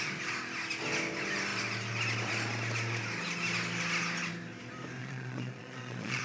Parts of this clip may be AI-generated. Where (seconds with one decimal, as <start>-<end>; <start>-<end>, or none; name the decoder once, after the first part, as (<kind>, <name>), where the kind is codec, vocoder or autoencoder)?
5.0-6.2 (vocoder, Vocos)